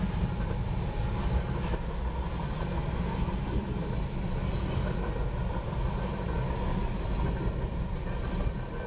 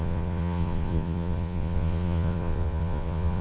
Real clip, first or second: first